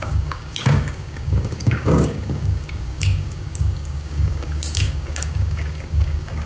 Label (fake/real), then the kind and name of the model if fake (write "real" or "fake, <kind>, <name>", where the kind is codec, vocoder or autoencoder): fake, codec, DAC